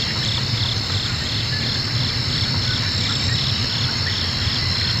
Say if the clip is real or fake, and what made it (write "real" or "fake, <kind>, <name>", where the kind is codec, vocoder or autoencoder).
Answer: real